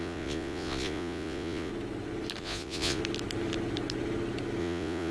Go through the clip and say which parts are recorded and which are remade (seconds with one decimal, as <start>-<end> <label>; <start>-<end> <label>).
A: 0.0-1.7 remade; 1.7-2.4 recorded; 2.4-3.0 remade; 3.0-4.6 recorded; 4.6-5.1 remade